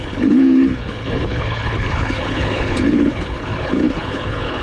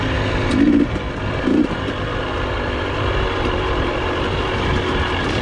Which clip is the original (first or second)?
second